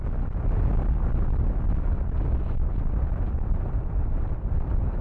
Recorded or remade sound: recorded